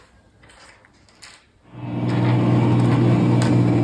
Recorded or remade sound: recorded